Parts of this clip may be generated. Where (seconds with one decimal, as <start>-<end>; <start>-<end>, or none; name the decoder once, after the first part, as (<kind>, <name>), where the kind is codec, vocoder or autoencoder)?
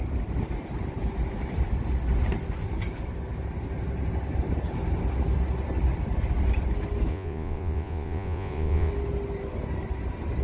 7.1-8.9 (vocoder, Vocos)